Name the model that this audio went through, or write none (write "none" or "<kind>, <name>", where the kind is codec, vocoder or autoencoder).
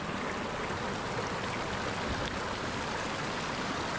none